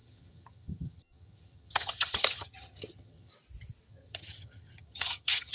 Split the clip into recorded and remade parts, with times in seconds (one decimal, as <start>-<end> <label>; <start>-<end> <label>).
0.0-3.3 remade; 3.3-3.9 recorded; 3.9-5.5 remade

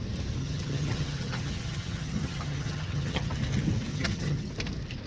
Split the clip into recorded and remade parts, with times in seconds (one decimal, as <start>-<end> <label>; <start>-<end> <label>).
0.0-0.4 recorded; 0.4-3.3 remade; 3.3-3.9 recorded; 3.9-4.5 remade; 4.5-5.1 recorded

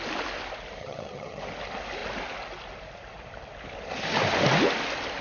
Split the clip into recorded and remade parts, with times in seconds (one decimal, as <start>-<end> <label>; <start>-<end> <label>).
0.0-0.8 recorded; 0.8-1.4 remade; 1.4-5.2 recorded